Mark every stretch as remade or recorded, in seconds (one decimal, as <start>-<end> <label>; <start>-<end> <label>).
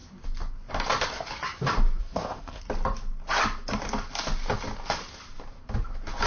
0.0-2.0 recorded; 2.0-2.6 remade; 2.6-6.3 recorded